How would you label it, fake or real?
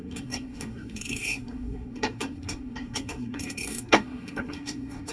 fake